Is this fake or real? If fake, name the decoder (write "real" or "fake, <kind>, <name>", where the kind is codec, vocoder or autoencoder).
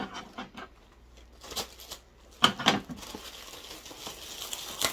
real